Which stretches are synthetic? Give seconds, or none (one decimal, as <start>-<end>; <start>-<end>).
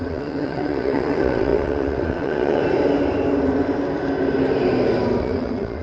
0.0-2.6; 5.2-5.8